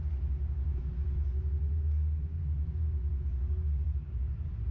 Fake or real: real